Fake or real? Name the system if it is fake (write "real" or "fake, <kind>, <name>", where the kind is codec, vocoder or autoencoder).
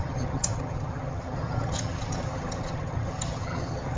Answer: fake, vocoder, HiFi-GAN